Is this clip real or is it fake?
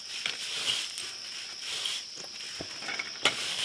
real